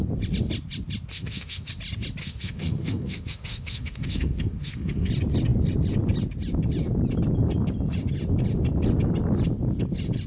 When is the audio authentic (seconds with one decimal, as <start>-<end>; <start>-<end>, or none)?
0.0-1.1; 1.7-2.2; 5.1-10.3